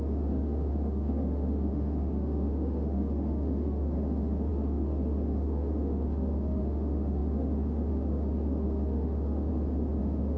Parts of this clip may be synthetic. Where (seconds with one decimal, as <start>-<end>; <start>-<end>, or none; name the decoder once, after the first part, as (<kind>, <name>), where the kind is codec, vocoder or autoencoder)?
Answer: 0.0-9.5 (autoencoder, DAC-VAE); 10.0-10.4